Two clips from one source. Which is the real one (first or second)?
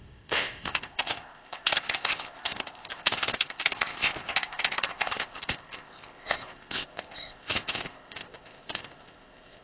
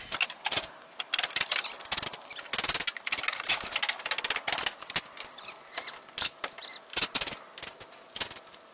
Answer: second